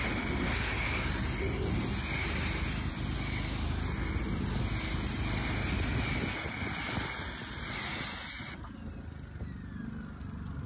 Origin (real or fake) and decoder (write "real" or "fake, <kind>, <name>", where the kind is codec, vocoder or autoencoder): real